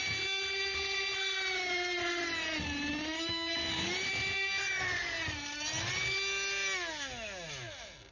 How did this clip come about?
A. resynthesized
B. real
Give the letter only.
B